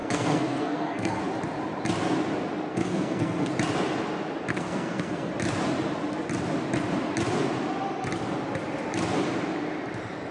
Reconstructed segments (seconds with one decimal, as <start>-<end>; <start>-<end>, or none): 0.0-1.2; 2.7-3.5; 4.5-5.3

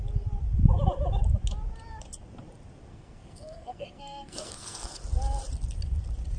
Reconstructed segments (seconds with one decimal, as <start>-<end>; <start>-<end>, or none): 2.9-5.0

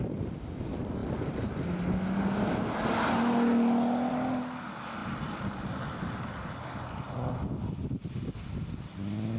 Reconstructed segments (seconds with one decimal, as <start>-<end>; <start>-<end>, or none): none

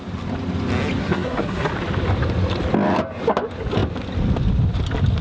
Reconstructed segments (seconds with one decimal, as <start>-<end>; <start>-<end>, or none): 1.0-1.7

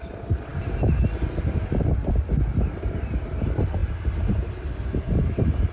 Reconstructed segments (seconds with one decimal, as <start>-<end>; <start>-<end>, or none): none

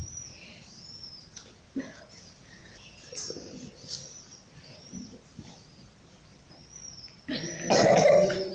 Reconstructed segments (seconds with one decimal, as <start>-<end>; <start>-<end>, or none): none